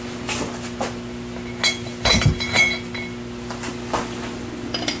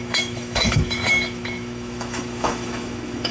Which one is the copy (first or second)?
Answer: second